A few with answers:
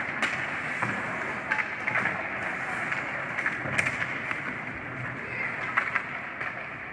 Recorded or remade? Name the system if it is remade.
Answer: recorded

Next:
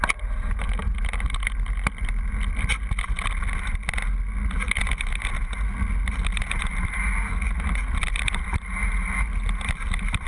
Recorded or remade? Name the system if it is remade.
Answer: recorded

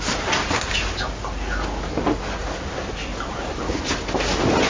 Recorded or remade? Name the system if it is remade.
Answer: recorded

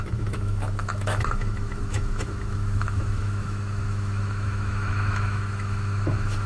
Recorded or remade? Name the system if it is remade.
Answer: remade, autoencoder, DAC-VAE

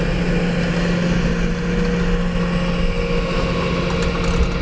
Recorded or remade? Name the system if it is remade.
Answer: recorded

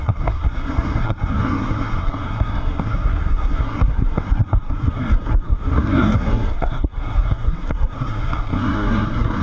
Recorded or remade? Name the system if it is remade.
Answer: remade, codec, SNAC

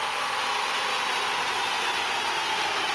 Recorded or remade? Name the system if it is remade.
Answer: recorded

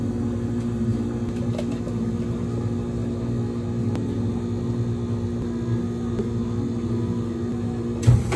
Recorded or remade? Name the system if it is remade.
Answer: recorded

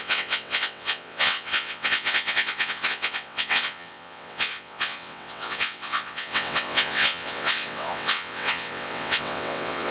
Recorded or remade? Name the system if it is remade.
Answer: remade, vocoder, WaveNeXt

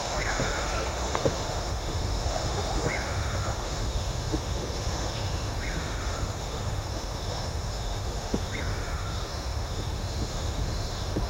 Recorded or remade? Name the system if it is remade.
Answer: remade, autoencoder, DAC-VAE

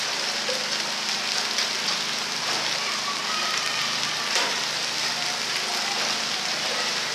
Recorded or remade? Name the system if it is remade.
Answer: recorded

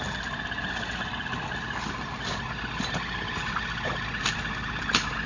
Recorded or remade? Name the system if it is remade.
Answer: recorded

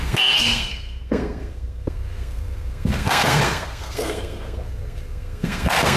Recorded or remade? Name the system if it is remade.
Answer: remade, codec, SNAC